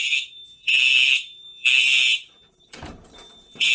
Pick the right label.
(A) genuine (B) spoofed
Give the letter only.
B